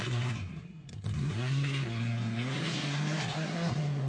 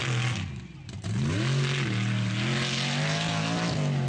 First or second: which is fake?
first